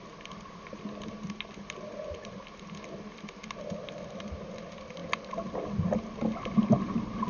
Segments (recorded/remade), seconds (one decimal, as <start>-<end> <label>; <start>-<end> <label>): 0.0-7.3 recorded